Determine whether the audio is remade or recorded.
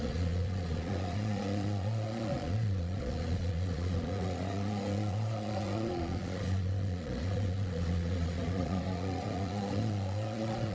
remade